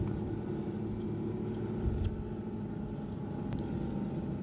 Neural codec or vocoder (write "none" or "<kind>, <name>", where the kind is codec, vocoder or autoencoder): none